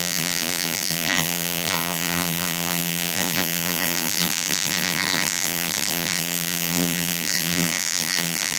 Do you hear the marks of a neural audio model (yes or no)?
yes